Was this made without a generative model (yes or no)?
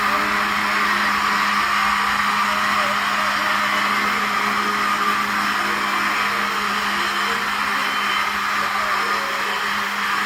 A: yes